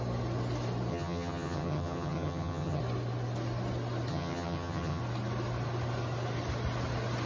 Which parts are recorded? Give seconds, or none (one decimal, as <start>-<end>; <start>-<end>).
0.0-0.9; 2.8-4.1; 5.0-7.3